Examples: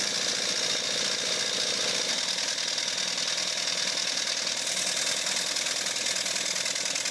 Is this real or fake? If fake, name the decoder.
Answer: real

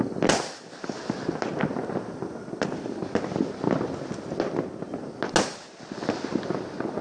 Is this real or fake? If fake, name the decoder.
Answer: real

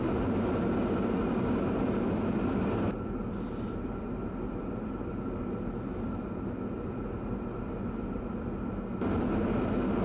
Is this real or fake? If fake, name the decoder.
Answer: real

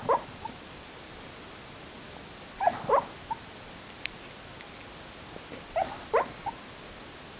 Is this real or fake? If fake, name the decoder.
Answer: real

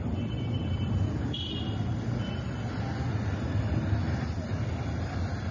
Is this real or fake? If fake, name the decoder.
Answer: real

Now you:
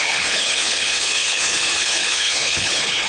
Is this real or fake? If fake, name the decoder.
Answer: fake, codec, HILCodec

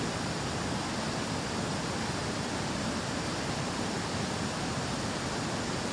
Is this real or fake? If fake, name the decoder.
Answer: real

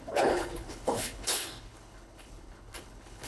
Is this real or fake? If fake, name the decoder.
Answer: fake, codec, HILCodec